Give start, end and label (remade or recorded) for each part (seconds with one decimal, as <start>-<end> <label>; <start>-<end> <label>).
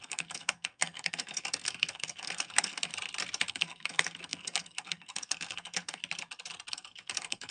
0.0-2.9 remade; 2.9-3.5 recorded; 3.5-6.0 remade; 6.0-6.7 recorded; 6.7-7.5 remade